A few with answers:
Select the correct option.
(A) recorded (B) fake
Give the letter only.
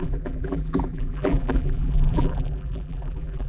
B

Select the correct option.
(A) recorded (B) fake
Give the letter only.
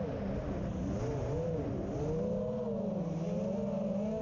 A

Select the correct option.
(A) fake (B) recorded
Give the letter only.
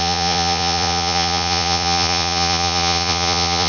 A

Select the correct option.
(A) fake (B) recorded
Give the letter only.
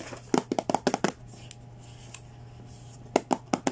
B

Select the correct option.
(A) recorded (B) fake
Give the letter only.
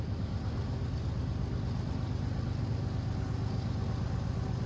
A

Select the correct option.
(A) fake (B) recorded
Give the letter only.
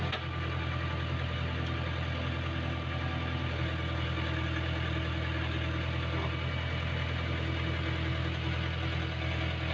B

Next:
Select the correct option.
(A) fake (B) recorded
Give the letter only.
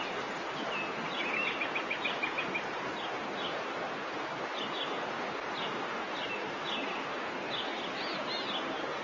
B